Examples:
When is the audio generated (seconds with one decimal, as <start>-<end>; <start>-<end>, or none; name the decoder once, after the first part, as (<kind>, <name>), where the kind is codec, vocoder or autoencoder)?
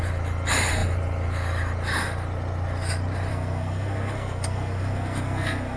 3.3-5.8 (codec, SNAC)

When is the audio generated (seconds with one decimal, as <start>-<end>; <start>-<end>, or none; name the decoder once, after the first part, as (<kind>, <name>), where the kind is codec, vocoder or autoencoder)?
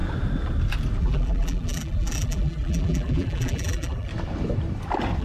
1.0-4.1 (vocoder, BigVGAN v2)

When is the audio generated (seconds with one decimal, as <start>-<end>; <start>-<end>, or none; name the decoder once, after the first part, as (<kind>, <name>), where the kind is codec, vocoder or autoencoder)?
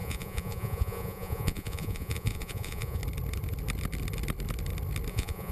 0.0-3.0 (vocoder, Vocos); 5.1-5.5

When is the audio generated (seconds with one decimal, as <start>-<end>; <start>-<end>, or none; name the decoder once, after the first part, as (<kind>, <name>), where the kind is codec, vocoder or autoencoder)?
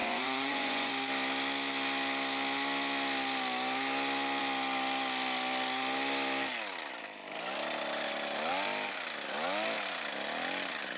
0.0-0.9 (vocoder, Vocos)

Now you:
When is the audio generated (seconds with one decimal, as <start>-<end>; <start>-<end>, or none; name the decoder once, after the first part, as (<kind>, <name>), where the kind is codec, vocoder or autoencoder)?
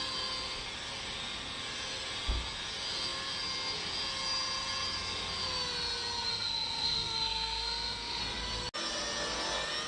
6.3-8.2 (codec, SNAC)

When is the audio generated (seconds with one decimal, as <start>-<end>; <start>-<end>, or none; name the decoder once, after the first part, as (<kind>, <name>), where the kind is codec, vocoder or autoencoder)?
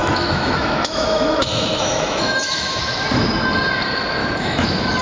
0.0-2.8 (autoencoder, DAC-VAE); 4.2-5.0